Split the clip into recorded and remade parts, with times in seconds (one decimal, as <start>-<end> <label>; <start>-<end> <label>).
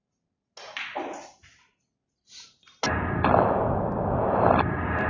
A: 0.0-5.1 recorded